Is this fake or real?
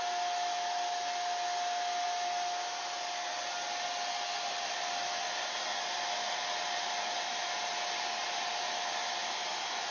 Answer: real